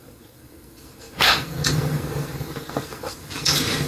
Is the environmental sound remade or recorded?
remade